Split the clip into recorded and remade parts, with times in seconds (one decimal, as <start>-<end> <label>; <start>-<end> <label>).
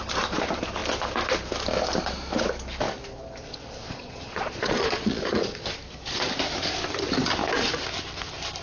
0.0-3.5 recorded; 3.5-5.7 remade; 5.7-8.6 recorded